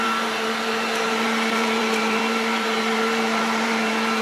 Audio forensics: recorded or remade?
remade